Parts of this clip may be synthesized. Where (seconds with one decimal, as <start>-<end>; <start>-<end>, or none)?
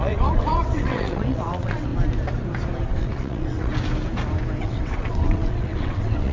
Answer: 0.0-1.9; 2.9-3.7; 4.6-6.3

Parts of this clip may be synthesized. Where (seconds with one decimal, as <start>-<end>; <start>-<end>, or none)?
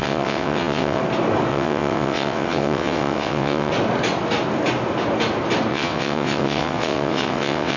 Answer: 0.0-1.0; 1.5-3.7; 5.7-7.8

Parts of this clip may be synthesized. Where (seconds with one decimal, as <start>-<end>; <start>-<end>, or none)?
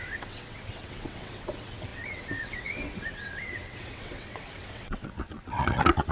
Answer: 0.0-6.1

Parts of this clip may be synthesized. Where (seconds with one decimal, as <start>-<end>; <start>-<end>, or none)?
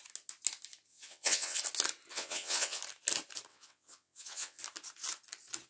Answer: 0.9-1.6; 2.1-2.8; 3.5-4.6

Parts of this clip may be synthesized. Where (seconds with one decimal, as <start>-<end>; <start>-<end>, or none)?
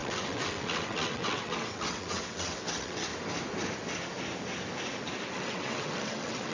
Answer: 0.0-3.1; 5.3-6.5